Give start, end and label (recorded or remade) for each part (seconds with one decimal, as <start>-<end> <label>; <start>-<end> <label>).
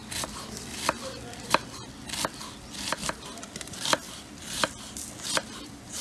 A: 0.0-1.8 remade; 1.8-5.3 recorded; 5.3-6.0 remade